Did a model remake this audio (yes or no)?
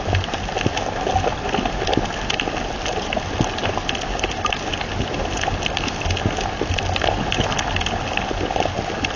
no